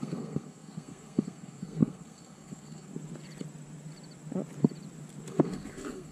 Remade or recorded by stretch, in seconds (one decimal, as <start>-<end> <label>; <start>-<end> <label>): 0.0-2.9 remade; 2.9-5.3 recorded; 5.3-6.1 remade